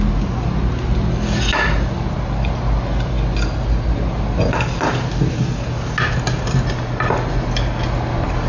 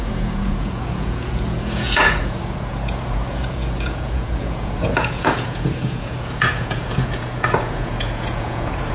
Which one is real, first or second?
first